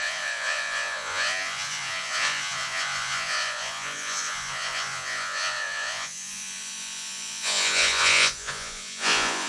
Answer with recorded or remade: remade